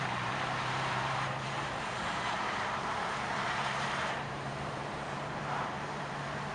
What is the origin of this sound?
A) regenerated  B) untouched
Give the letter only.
A